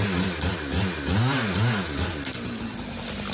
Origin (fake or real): real